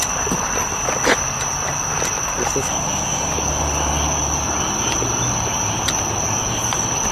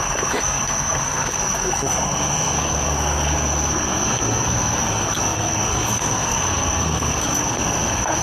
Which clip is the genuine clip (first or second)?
first